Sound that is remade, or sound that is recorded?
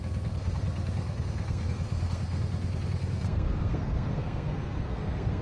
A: remade